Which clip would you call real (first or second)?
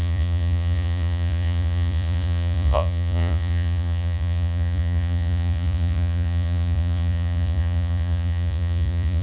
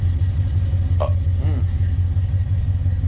second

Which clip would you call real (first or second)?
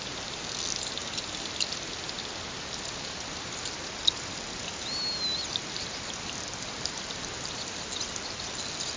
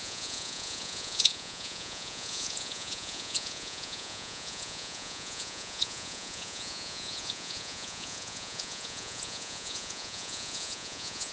first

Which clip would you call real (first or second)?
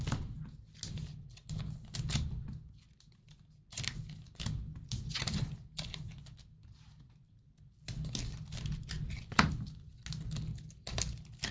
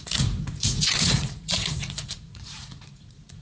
first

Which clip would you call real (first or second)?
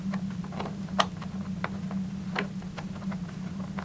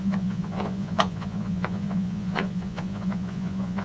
first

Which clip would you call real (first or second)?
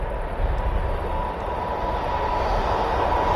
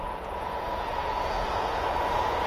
first